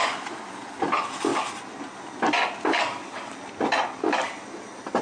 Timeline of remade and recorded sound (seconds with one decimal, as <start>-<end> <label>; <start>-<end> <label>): 0.0-5.0 recorded